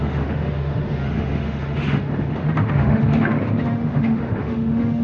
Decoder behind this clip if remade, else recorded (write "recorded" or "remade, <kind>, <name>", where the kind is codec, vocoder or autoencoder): remade, autoencoder, DAC-VAE